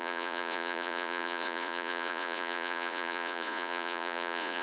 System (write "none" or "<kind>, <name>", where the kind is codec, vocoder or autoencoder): vocoder, Vocos